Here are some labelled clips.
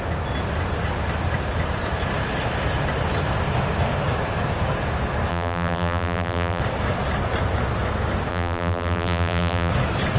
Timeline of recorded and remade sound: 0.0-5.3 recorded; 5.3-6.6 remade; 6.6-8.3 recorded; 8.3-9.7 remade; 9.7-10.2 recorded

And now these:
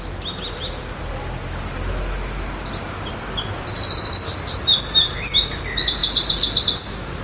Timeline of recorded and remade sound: 0.0-7.2 recorded

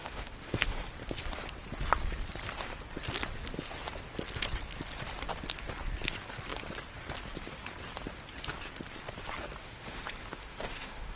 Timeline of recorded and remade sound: 0.0-0.8 remade; 0.8-9.6 recorded; 9.6-11.2 remade

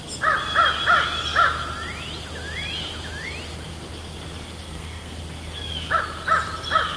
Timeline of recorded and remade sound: 0.0-4.6 recorded; 4.6-5.2 remade; 5.2-7.0 recorded

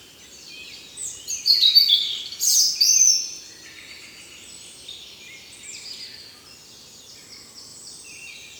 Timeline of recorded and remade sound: 0.0-1.0 recorded; 1.0-2.1 remade; 2.1-7.7 recorded; 7.7-8.6 remade

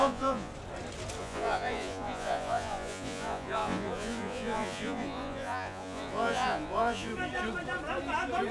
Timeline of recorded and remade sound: 0.0-0.5 remade; 0.5-1.2 recorded; 1.2-7.1 remade; 7.1-8.5 recorded

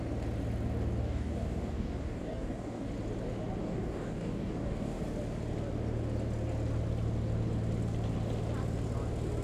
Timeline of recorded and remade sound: 0.0-1.0 recorded; 1.0-2.9 remade; 2.9-3.6 recorded; 3.6-5.0 remade; 5.0-9.4 recorded

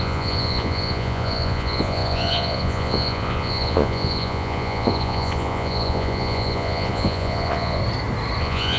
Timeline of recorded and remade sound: 0.0-7.8 remade; 7.8-8.4 recorded; 8.4-8.8 remade